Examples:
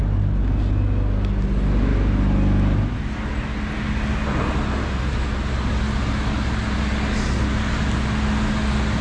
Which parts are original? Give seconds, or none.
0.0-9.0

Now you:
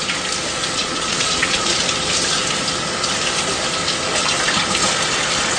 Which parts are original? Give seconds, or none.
0.0-0.8; 1.8-5.6

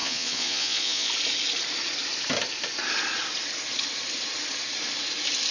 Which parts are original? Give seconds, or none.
1.1-5.5

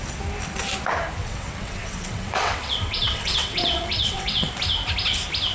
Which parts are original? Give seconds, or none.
0.0-1.2; 4.5-5.5

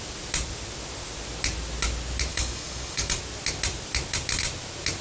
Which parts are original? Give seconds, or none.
0.0-2.3; 3.2-5.0